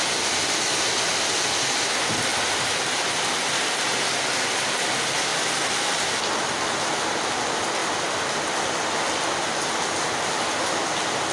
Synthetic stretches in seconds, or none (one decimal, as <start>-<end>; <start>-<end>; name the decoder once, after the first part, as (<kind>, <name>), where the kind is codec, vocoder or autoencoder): none